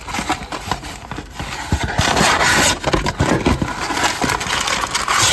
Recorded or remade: recorded